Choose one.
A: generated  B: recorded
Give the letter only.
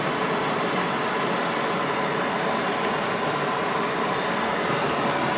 B